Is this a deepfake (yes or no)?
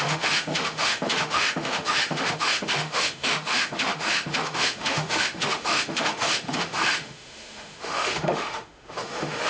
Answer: yes